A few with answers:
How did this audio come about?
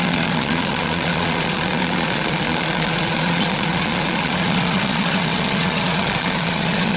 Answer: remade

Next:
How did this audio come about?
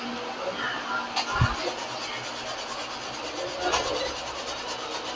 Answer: recorded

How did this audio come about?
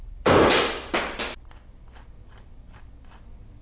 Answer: recorded